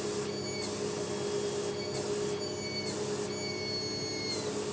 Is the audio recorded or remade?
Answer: recorded